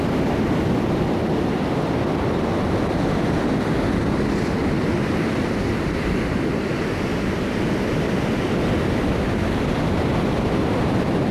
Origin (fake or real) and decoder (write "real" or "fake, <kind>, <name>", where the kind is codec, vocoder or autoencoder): real